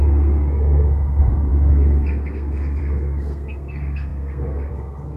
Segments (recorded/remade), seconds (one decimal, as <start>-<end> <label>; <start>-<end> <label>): 0.0-5.2 remade